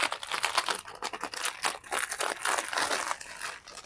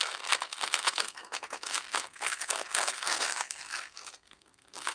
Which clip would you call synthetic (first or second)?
second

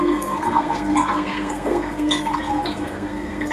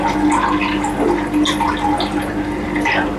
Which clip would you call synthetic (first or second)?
first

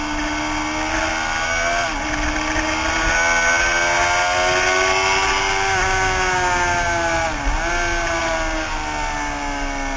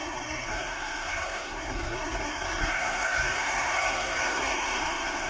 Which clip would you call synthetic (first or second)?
second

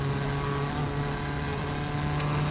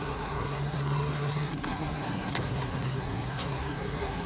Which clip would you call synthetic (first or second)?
second